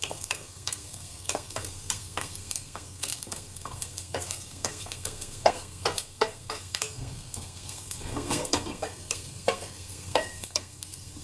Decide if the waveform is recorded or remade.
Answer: remade